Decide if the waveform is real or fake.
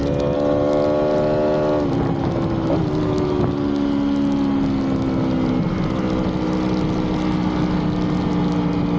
real